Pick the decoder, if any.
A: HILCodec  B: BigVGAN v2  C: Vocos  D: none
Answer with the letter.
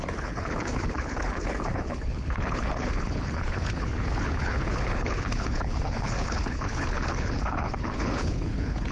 A